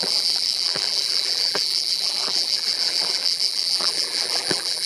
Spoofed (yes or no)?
yes